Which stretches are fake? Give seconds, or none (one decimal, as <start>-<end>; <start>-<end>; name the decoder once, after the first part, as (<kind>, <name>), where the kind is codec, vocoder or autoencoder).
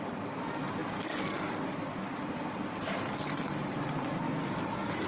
none